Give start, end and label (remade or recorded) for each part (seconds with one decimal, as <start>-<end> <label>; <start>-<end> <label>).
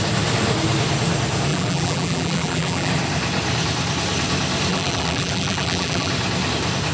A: 0.0-1.5 recorded; 1.5-2.9 remade; 2.9-4.7 recorded; 4.7-6.1 remade; 6.1-6.9 recorded